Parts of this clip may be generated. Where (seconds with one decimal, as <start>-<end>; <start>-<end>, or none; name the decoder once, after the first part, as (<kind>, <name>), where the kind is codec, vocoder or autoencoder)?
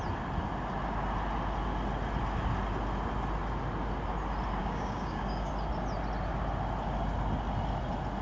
4.6-5.5 (codec, DAC)